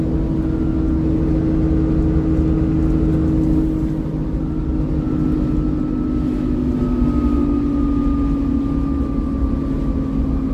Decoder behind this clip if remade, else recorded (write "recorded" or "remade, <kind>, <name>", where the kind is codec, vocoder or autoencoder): recorded